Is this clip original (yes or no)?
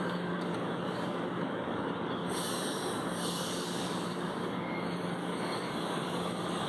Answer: no